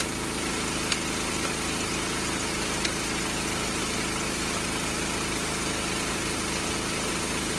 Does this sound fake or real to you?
real